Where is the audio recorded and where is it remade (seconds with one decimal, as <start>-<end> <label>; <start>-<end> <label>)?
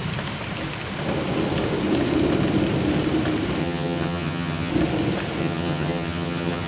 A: 0.0-3.6 recorded; 3.6-4.7 remade; 4.7-5.4 recorded; 5.4-6.7 remade